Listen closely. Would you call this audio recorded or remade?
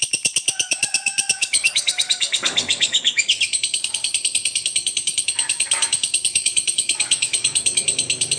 remade